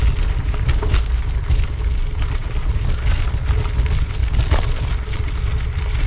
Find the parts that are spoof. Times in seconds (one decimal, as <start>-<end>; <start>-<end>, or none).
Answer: 2.4-3.7